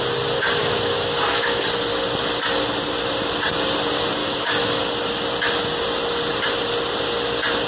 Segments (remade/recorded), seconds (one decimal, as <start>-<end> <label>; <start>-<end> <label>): 0.0-0.6 recorded; 0.6-1.6 remade; 1.6-4.2 recorded; 4.2-4.8 remade; 4.8-7.7 recorded